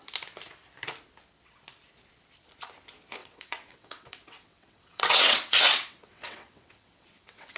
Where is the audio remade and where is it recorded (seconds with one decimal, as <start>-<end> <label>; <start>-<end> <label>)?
0.0-3.2 recorded; 3.2-7.6 remade